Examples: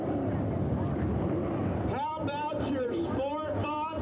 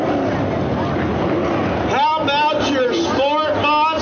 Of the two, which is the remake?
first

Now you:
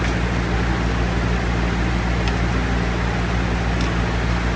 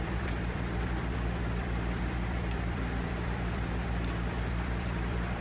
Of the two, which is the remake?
second